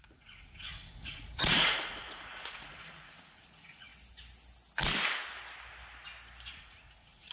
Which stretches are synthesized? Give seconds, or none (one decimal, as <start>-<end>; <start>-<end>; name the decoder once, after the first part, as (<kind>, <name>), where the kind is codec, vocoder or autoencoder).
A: 0.0-3.9 (vocoder, Vocos); 6.5-7.3